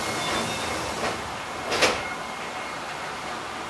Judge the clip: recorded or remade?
recorded